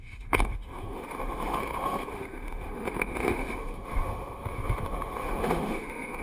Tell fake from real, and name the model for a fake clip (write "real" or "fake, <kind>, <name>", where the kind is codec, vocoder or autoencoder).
fake, autoencoder, DAC-VAE